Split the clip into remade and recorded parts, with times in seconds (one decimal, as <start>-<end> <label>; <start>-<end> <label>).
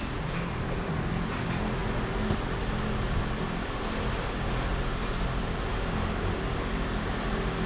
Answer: 0.0-7.7 recorded